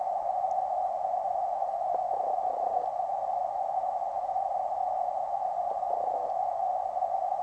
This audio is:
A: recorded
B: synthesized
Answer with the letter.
A